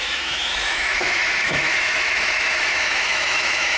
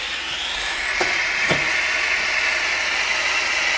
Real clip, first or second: second